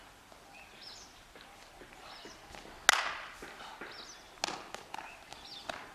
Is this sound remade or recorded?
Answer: recorded